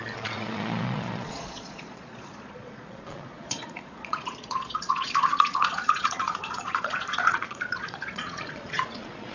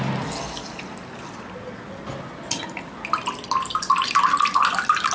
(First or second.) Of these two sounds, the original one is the second